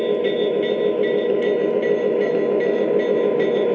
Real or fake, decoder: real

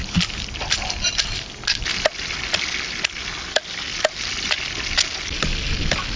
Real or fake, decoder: real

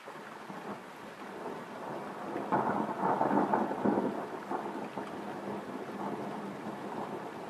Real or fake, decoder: real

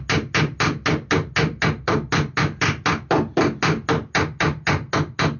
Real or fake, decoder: real